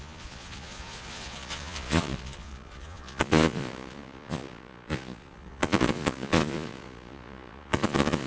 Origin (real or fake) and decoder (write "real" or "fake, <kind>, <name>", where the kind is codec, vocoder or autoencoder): fake, vocoder, Vocos